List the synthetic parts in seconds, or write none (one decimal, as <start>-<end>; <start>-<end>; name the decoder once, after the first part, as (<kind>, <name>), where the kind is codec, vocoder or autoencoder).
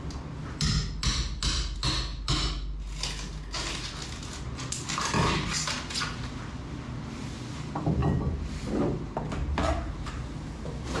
none